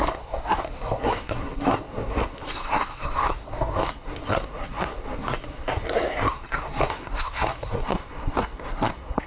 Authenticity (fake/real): fake